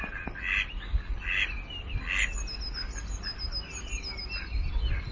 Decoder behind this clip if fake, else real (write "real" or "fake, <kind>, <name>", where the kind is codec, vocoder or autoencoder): real